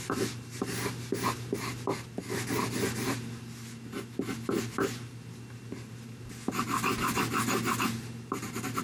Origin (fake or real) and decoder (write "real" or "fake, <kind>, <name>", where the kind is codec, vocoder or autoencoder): real